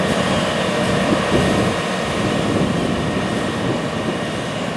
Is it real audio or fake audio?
real